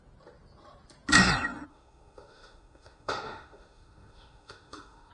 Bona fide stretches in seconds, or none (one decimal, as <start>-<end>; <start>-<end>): 0.0-1.7